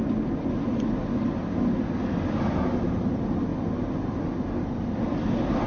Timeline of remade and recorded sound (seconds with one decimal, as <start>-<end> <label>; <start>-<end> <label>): 0.0-5.7 recorded

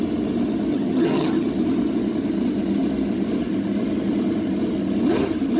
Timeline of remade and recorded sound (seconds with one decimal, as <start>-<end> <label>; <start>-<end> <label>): 0.0-0.7 recorded; 0.7-1.5 remade; 1.5-5.6 recorded

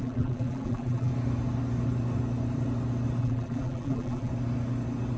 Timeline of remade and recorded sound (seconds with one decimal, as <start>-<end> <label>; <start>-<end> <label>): 0.0-1.1 remade; 1.1-3.2 recorded; 3.2-4.3 remade; 4.3-5.2 recorded